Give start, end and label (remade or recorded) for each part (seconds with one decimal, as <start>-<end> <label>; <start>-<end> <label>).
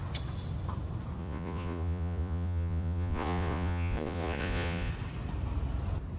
0.0-1.2 recorded; 1.2-4.9 remade; 4.9-6.2 recorded